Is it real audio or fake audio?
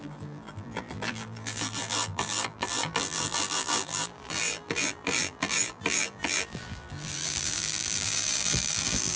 fake